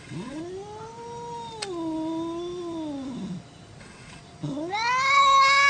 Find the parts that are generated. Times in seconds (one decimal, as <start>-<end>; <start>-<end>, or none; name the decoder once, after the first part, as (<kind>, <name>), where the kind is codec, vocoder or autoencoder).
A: 0.0-0.4 (vocoder, WaveNeXt); 3.8-4.2